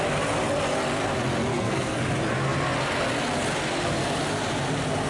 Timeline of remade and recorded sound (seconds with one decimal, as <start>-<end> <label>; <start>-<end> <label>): 0.0-1.5 recorded; 1.5-2.0 remade; 2.0-5.1 recorded